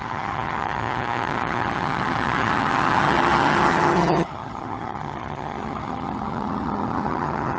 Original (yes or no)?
no